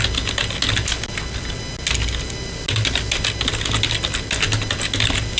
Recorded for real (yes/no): yes